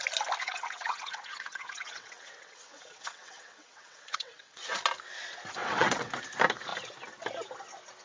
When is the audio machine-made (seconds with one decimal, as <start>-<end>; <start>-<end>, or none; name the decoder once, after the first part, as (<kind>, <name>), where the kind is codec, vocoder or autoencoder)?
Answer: 0.4-4.8 (vocoder, WaveNeXt); 5.6-6.1